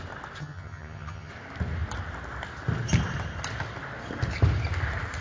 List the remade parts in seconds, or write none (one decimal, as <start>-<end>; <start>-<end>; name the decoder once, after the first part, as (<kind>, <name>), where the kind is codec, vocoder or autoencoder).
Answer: 0.4-1.3 (vocoder, HiFi-GAN)